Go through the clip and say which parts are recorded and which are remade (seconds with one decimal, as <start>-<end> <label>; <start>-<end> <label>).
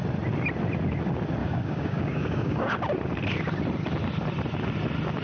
0.0-1.4 recorded; 1.4-2.7 remade; 2.7-5.2 recorded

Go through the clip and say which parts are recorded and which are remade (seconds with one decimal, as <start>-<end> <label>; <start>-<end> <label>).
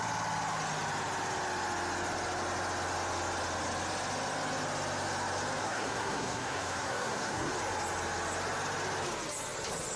0.0-5.6 recorded; 5.6-7.5 remade; 7.5-10.0 recorded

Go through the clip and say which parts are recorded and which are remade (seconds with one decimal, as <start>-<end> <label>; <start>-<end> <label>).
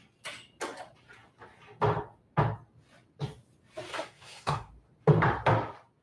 0.0-3.9 recorded; 3.9-4.7 remade; 4.7-6.0 recorded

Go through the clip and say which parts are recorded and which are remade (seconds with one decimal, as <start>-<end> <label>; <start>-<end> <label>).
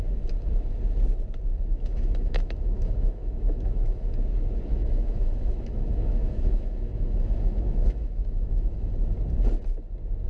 0.0-1.7 recorded; 1.7-4.1 remade; 4.1-4.7 recorded; 4.7-8.9 remade; 8.9-10.3 recorded